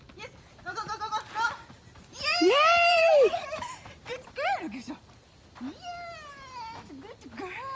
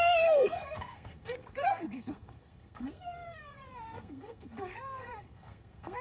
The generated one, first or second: second